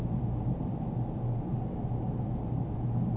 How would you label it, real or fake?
real